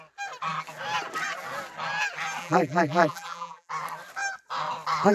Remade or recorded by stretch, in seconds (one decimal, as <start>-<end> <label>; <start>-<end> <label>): 0.0-2.4 recorded; 2.4-3.7 remade; 3.7-5.1 recorded